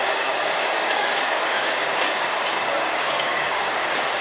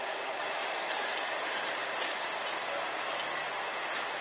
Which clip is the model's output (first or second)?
first